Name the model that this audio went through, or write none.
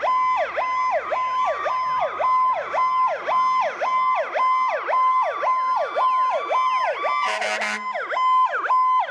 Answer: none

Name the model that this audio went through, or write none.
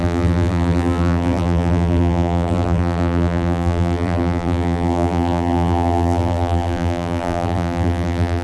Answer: vocoder, BigVGAN v2